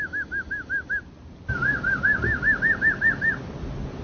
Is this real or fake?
real